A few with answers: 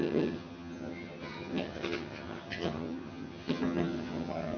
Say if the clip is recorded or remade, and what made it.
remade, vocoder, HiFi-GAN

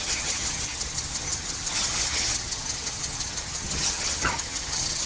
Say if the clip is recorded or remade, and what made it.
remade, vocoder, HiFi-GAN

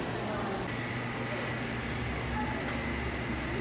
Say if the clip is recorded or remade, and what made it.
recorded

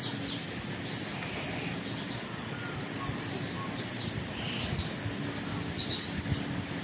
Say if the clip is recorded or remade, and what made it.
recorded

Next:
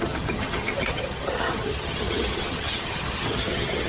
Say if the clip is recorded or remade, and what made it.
remade, vocoder, HiFi-GAN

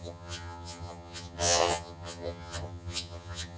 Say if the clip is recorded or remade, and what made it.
remade, vocoder, HiFi-GAN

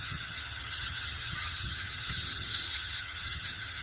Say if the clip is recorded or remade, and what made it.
remade, vocoder, HiFi-GAN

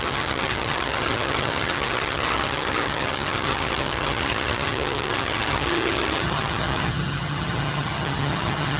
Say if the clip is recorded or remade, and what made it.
remade, vocoder, HiFi-GAN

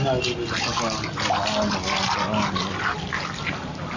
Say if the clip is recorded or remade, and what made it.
recorded